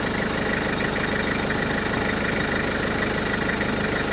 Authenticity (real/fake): real